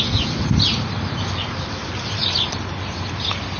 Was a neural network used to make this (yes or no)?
no